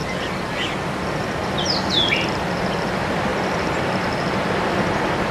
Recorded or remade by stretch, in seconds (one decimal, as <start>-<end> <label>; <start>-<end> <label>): 0.0-0.7 remade; 0.7-5.3 recorded